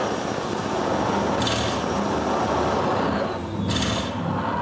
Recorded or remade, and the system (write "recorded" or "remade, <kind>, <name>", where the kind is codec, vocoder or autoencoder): recorded